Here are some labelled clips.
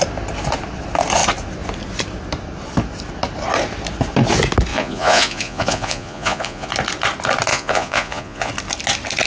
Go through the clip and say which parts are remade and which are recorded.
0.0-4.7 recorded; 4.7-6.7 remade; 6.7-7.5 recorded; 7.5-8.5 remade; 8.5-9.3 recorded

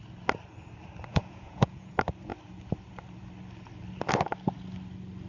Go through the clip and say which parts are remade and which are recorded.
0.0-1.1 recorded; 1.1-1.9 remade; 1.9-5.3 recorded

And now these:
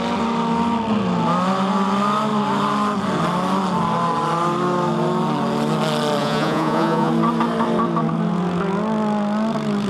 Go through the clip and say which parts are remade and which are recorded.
0.0-6.2 recorded; 6.2-7.1 remade; 7.1-9.9 recorded

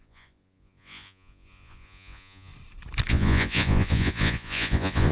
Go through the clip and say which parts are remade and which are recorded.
0.0-2.5 remade; 2.5-3.1 recorded; 3.1-5.1 remade

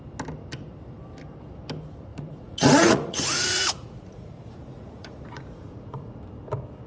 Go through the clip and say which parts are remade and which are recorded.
0.0-2.1 recorded; 2.1-6.2 remade; 6.2-6.9 recorded

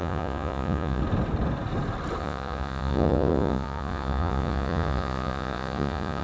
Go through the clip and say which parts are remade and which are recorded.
0.0-1.0 remade; 1.0-2.2 recorded; 2.2-6.2 remade

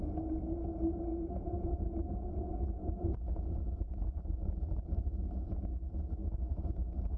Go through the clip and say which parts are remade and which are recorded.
0.0-1.1 recorded; 1.1-1.6 remade; 1.6-2.8 recorded; 2.8-4.2 remade; 4.2-6.2 recorded; 6.2-6.8 remade; 6.8-7.2 recorded